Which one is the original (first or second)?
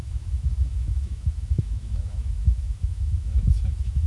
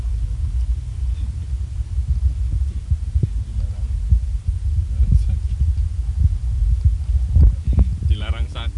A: second